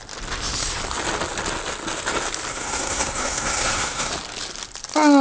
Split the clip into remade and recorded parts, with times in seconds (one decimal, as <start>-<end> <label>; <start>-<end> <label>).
0.0-2.5 recorded; 2.5-4.1 remade; 4.1-5.2 recorded